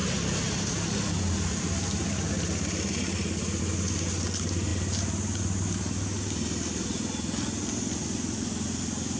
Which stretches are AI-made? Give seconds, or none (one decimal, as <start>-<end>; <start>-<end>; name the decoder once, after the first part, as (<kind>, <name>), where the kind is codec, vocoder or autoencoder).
none